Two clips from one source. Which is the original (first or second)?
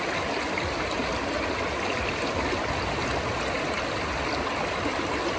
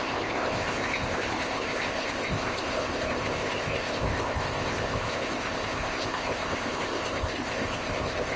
first